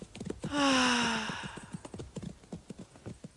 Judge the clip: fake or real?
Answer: real